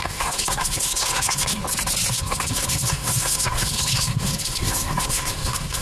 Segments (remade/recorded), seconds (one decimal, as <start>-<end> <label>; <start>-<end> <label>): 0.0-1.6 remade; 1.6-2.1 recorded; 2.1-5.8 remade